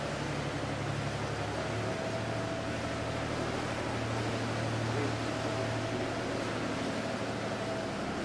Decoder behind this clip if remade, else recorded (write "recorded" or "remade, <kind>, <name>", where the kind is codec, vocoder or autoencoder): recorded